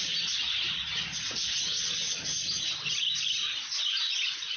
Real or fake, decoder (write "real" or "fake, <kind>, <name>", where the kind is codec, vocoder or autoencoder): real